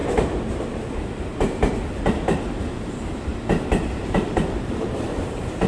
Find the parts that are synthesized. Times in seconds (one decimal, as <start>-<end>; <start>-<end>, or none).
0.0-3.3; 3.8-5.7

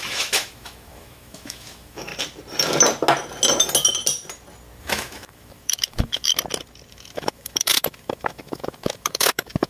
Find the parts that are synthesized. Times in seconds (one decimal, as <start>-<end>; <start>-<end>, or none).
0.0-2.1; 4.8-6.3; 6.9-9.7

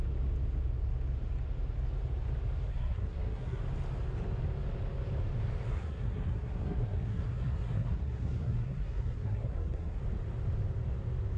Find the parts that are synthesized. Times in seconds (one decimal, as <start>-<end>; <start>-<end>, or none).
2.7-3.6; 5.7-10.0

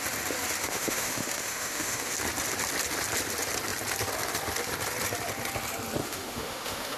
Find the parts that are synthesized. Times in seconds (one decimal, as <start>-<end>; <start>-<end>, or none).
0.6-2.1; 6.0-7.0

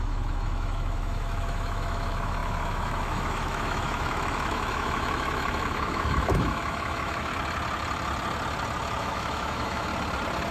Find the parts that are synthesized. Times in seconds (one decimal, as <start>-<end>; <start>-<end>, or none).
0.0-7.3; 9.0-9.9

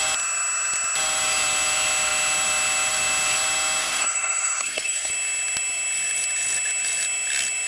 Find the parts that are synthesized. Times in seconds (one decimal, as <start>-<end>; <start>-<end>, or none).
3.8-5.1